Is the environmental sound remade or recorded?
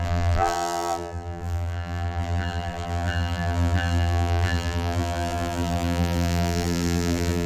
remade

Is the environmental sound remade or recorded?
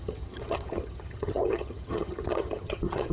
remade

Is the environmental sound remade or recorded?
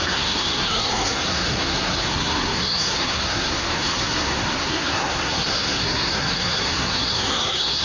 remade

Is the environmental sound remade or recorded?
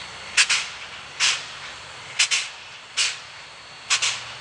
recorded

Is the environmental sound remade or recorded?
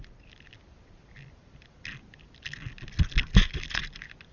recorded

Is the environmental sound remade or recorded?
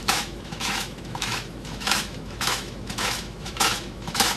remade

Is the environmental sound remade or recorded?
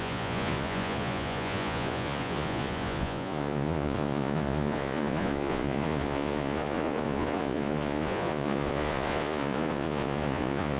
remade